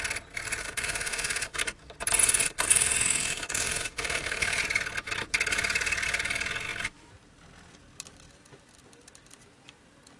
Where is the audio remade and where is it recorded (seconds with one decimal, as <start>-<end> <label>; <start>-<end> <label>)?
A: 0.0-0.6 recorded; 0.6-1.6 remade; 1.6-2.2 recorded; 2.2-4.6 remade; 4.6-10.2 recorded

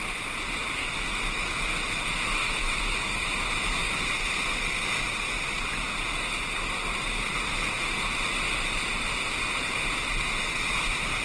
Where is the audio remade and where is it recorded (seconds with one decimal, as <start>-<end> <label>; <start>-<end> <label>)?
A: 0.0-0.8 recorded; 0.8-4.0 remade; 4.0-11.2 recorded